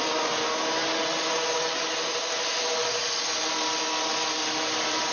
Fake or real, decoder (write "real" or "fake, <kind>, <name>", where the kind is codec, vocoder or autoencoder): real